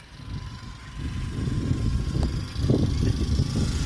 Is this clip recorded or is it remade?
recorded